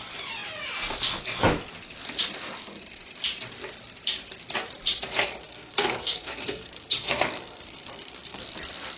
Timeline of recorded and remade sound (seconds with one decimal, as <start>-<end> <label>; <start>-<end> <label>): 0.0-5.3 recorded; 5.3-8.4 remade; 8.4-9.0 recorded